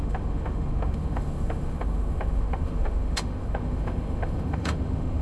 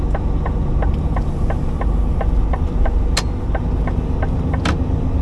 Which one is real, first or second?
second